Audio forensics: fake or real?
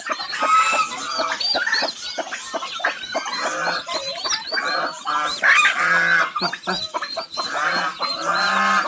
real